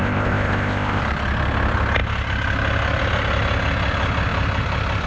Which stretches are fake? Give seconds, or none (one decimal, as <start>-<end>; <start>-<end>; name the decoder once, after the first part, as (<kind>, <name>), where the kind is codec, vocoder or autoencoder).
0.0-1.0 (codec, ZipCodec)